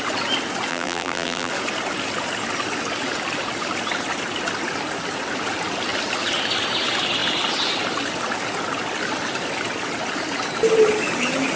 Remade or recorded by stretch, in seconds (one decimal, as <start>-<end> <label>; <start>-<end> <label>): 0.0-0.7 recorded; 0.7-1.5 remade; 1.5-11.6 recorded